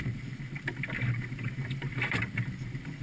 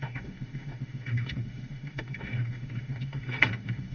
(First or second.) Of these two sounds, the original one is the first